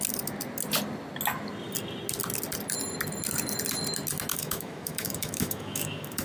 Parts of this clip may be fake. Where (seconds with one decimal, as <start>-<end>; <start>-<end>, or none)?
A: 4.3-6.2